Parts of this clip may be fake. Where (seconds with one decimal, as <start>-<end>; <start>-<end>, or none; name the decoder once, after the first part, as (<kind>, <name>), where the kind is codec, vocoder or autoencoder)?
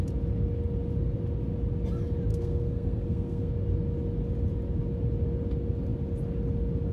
2.3-3.5 (codec, SNAC)